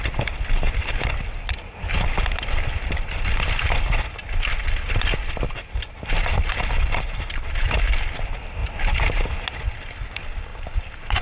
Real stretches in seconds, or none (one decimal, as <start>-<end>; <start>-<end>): 0.0-6.2; 7.8-8.6; 9.2-10.5